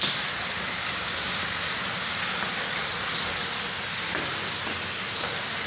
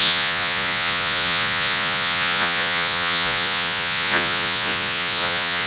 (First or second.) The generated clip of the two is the second